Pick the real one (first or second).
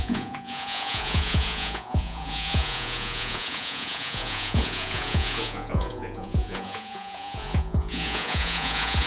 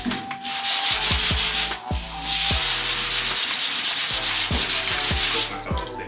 second